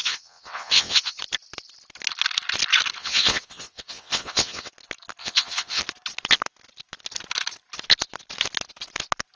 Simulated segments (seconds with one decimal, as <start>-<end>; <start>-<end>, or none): 0.0-1.2; 3.0-4.7; 5.2-5.8